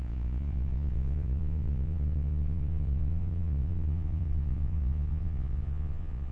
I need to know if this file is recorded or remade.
remade